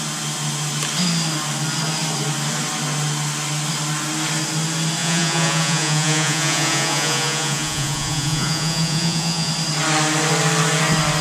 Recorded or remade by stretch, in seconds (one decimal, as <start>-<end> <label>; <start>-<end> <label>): 0.0-5.0 recorded; 5.0-9.5 remade; 9.5-11.2 recorded